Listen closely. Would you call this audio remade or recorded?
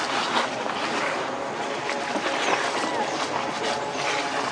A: recorded